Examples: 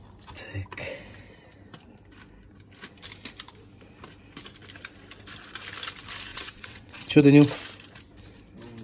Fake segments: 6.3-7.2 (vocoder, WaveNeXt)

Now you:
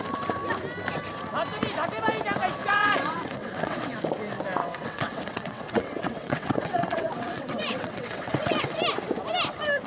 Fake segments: 2.6-4.0 (vocoder, WaveNeXt); 4.6-8.8

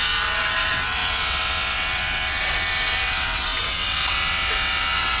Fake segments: 0.0-5.2 (vocoder, WaveNeXt)

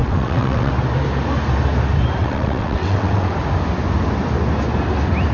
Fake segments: 0.0-0.7 (vocoder, WaveNeXt); 2.2-3.3

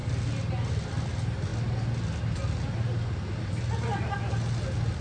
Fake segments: none

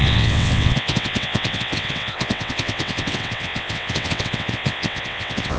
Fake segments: 0.0-5.6 (vocoder, WaveNeXt)

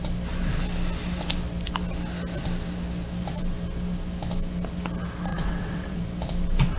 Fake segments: 5.3-6.0 (vocoder, WaveNeXt)